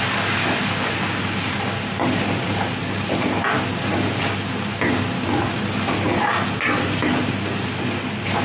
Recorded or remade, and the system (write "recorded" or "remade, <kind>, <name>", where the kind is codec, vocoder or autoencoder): recorded